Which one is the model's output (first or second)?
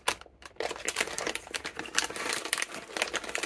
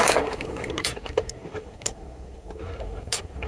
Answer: second